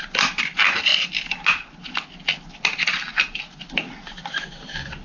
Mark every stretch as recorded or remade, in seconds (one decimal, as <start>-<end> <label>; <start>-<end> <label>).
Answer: 0.0-5.0 recorded